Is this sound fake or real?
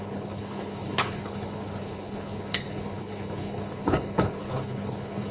fake